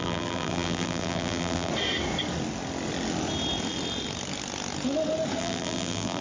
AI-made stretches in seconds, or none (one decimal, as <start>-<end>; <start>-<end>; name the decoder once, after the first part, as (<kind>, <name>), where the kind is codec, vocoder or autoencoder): 0.0-1.7 (vocoder, BigVGAN v2); 5.4-6.2